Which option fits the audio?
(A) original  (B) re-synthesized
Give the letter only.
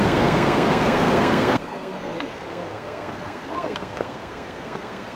B